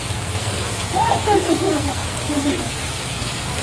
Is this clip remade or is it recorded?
remade